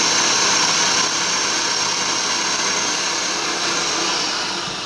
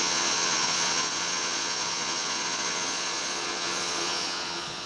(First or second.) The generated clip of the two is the second